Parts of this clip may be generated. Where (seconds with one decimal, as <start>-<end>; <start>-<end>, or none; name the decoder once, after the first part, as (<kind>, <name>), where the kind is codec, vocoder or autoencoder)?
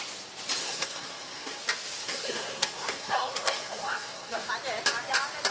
0.6-1.6 (codec, SNAC); 2.0-4.5